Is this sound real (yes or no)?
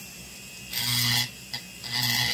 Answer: yes